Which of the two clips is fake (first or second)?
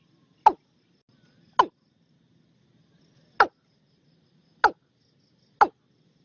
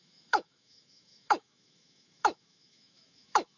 second